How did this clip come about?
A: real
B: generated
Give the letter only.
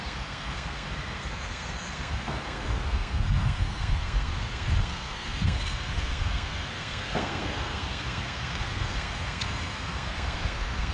B